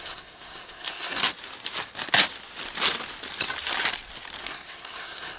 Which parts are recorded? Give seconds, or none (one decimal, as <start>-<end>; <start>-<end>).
1.2-4.4